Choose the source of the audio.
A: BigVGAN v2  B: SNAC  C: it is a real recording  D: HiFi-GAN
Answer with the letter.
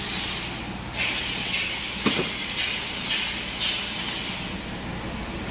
C